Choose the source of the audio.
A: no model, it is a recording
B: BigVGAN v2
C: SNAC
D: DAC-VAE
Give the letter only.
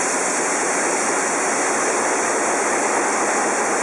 A